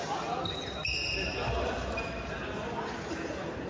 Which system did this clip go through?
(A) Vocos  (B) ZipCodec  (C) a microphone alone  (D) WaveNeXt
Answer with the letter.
C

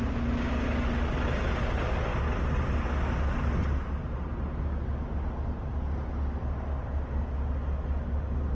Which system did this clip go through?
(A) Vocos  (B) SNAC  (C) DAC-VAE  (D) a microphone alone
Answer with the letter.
D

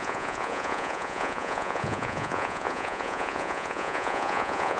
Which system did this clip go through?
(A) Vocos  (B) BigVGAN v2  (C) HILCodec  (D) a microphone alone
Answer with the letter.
A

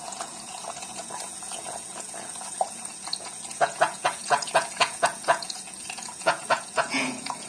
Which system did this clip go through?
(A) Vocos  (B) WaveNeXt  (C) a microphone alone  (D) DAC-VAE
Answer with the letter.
A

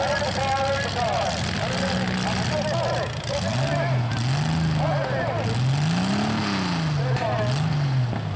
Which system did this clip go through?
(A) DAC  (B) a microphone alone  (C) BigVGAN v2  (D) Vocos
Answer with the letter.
B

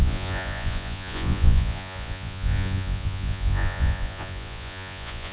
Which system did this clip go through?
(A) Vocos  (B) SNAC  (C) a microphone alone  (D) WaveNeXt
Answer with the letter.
A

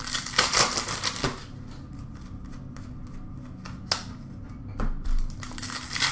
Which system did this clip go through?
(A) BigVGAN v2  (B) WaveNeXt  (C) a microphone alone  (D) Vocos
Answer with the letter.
C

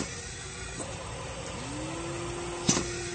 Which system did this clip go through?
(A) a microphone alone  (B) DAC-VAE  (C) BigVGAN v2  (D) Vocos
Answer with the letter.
A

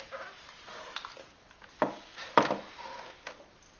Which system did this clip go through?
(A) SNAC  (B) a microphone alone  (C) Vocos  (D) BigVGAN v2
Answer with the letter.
B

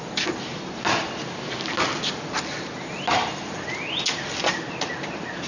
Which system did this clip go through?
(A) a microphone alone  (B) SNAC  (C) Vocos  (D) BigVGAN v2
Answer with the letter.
A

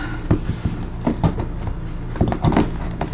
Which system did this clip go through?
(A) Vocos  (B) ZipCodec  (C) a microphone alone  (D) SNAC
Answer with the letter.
C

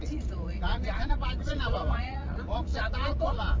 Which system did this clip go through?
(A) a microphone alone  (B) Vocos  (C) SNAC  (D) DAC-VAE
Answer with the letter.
B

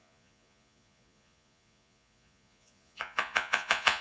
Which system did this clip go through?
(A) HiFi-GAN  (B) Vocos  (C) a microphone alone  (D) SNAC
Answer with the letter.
B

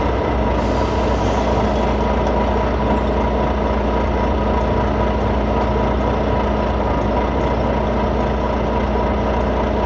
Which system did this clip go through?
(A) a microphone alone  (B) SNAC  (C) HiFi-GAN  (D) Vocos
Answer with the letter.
A